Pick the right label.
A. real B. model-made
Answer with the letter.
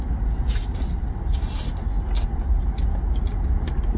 A